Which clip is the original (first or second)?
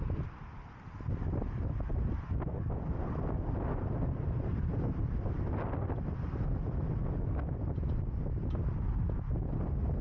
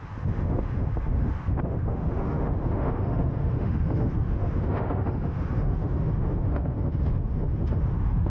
first